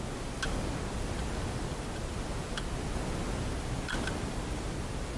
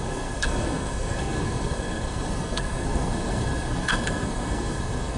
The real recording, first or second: first